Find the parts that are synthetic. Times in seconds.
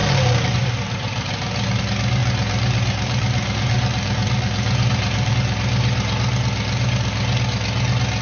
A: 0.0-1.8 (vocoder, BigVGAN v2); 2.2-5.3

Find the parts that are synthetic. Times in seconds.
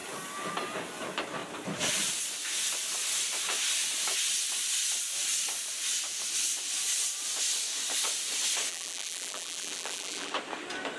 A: 8.7-10.3 (vocoder, BigVGAN v2)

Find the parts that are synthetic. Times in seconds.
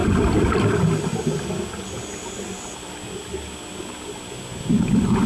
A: none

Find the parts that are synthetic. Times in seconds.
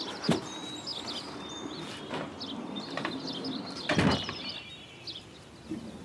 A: 0.9-4.5 (vocoder, BigVGAN v2)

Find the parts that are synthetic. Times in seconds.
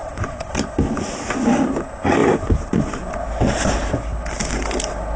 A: 0.0-0.5 (vocoder, BigVGAN v2); 2.2-3.0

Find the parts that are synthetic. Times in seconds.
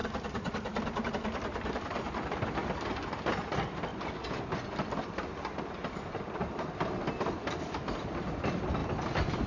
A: 0.0-2.6 (vocoder, BigVGAN v2); 3.5-3.9; 6.1-9.5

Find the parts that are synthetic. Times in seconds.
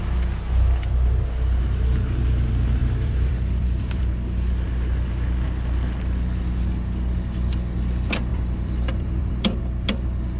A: 2.8-4.0 (vocoder, BigVGAN v2); 8.3-9.6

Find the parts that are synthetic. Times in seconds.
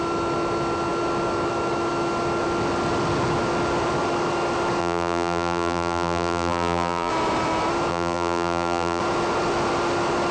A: 4.8-7.1 (vocoder, BigVGAN v2); 7.9-9.0